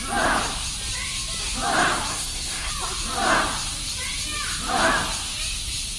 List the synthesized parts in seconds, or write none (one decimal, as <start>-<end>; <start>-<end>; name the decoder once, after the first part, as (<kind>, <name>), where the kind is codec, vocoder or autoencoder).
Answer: 2.1-2.7 (codec, SNAC)